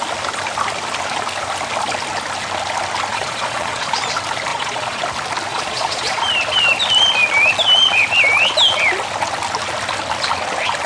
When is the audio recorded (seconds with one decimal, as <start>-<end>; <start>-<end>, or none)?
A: 0.0-3.1; 3.9-4.5; 5.0-5.5; 6.2-10.9